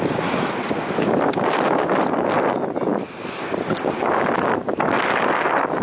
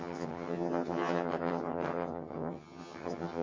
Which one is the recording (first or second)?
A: first